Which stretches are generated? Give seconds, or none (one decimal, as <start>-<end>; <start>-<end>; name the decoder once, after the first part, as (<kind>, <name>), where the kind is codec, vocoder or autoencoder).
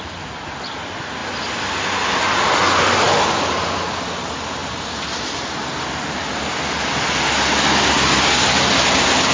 none